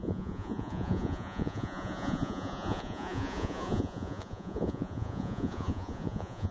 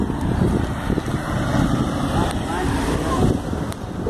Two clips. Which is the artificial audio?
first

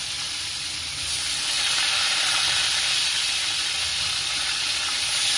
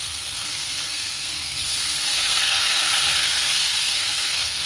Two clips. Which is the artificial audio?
second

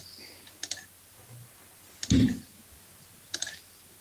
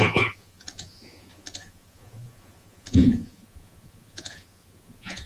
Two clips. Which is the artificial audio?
second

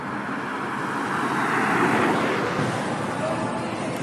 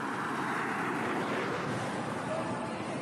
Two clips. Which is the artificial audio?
second